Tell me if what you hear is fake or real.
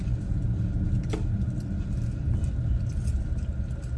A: real